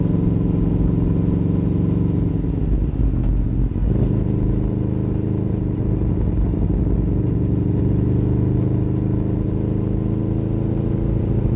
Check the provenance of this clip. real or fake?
real